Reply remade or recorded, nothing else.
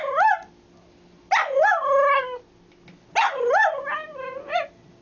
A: recorded